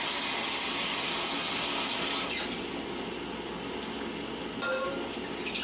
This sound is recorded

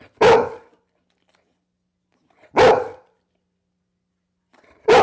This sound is recorded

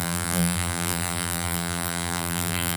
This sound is remade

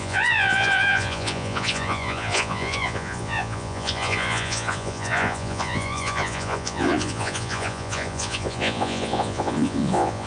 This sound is remade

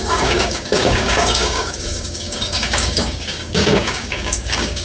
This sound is remade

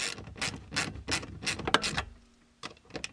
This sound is recorded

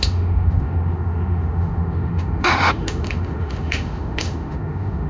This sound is remade